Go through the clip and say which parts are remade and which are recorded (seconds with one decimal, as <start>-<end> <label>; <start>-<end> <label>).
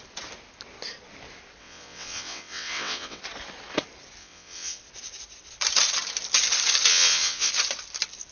0.0-1.6 recorded; 1.6-3.2 remade; 3.2-4.2 recorded; 4.2-4.8 remade; 4.8-6.9 recorded; 6.9-7.5 remade; 7.5-8.3 recorded